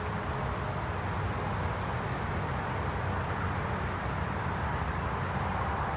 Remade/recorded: recorded